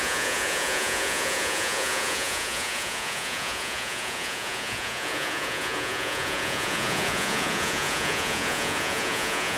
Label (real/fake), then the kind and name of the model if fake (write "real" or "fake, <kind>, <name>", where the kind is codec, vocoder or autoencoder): fake, vocoder, Vocos